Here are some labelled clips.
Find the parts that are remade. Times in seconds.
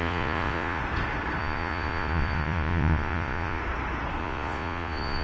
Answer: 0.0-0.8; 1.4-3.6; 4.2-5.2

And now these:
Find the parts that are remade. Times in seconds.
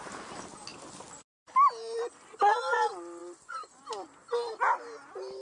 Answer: 3.2-3.8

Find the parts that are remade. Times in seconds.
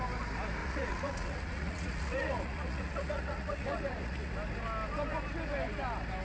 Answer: 0.6-4.3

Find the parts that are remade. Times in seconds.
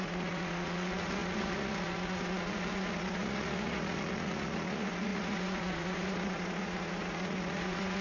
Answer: 0.0-8.0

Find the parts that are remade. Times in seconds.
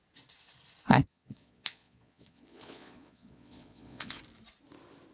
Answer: 1.1-4.2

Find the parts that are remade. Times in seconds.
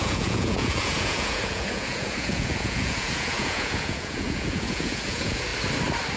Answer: 0.0-5.5